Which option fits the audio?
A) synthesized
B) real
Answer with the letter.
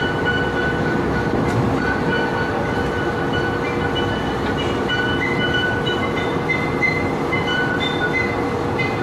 B